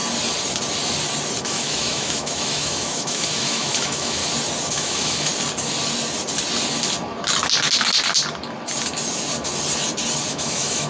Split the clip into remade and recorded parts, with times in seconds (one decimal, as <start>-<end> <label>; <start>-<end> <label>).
0.0-1.4 recorded; 1.4-4.2 remade; 4.2-4.7 recorded; 4.7-5.3 remade; 5.3-10.3 recorded; 10.3-10.9 remade